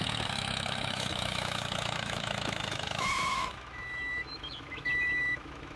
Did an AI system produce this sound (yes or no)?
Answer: yes